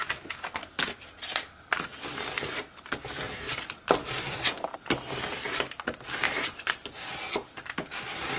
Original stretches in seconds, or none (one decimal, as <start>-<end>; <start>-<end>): 0.0-8.4